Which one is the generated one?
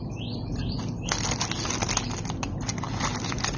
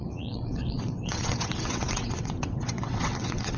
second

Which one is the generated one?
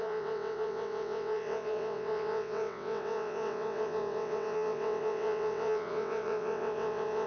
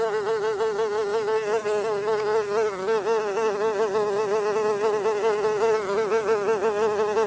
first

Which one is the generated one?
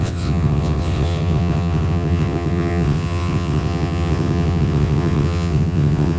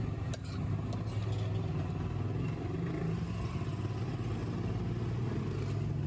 first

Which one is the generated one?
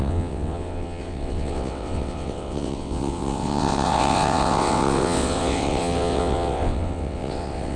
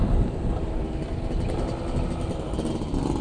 first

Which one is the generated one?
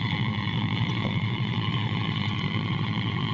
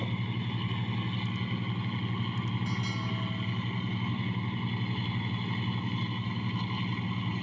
first